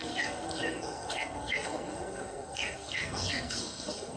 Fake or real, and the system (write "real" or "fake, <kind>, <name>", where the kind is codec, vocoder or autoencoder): fake, codec, SNAC